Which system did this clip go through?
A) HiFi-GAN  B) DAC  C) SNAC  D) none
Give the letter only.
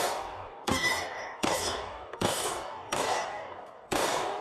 B